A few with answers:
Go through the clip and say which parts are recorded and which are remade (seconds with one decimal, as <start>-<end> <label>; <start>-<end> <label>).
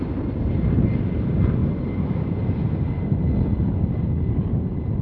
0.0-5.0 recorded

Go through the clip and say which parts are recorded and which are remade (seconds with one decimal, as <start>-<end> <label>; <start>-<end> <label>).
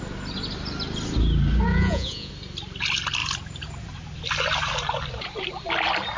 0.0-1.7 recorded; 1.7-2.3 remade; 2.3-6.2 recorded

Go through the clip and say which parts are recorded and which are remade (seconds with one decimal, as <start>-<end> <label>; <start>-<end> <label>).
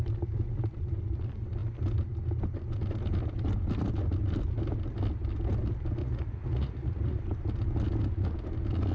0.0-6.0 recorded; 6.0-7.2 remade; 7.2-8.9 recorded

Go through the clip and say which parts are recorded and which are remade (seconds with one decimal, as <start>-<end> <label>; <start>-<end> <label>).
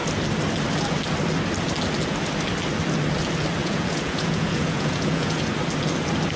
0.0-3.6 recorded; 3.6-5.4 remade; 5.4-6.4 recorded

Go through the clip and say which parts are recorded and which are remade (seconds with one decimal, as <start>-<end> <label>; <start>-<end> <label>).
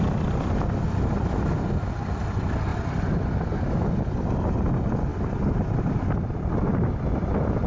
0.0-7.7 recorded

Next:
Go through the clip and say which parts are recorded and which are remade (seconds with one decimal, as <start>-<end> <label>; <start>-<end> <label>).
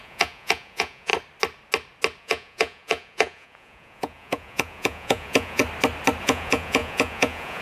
0.0-1.1 remade; 1.1-2.2 recorded; 2.2-5.6 remade; 5.6-6.2 recorded; 6.2-7.6 remade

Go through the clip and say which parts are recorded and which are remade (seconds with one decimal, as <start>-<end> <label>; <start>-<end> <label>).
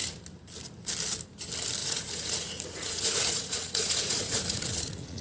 0.0-1.8 recorded; 1.8-5.2 remade